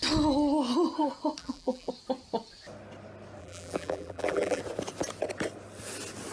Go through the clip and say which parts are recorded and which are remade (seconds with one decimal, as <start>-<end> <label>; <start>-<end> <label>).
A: 0.0-1.4 recorded; 1.4-1.9 remade; 1.9-3.4 recorded; 3.4-4.6 remade; 4.6-6.3 recorded